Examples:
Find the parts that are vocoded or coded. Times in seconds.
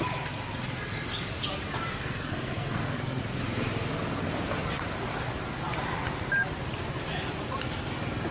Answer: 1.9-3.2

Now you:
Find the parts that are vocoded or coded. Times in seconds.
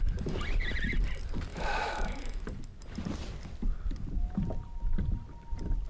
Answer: 1.5-2.4